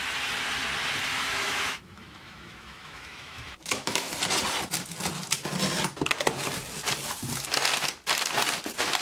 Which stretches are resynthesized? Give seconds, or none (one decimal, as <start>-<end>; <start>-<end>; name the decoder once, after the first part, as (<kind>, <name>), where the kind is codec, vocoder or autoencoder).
1.1-4.1 (autoencoder, DAC-VAE)